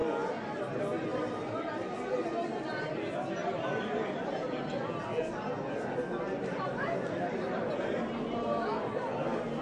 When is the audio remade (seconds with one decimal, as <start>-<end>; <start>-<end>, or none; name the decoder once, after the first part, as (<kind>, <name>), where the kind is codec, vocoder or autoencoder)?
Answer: none